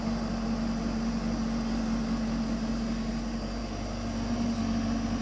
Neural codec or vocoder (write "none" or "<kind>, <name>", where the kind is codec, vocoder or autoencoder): none